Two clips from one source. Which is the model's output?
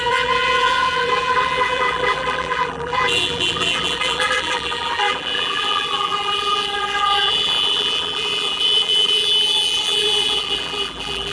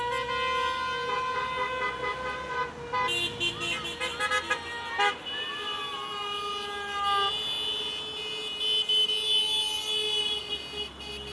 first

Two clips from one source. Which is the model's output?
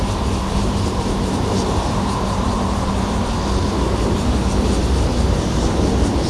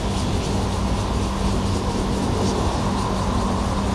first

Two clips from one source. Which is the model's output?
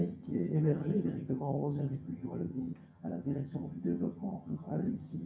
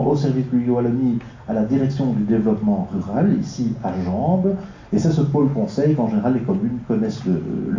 first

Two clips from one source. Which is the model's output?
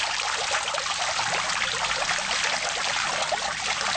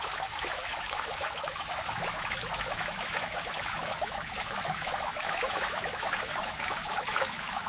second